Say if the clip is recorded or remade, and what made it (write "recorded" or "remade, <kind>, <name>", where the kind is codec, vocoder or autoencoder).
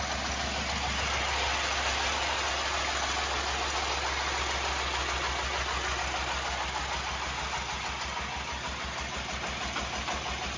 recorded